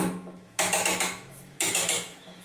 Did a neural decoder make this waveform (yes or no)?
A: yes